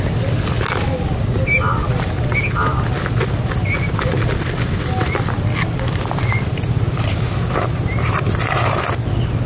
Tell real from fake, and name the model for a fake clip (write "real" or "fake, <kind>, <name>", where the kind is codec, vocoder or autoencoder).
real